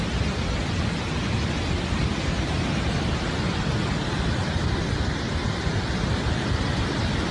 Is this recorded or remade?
recorded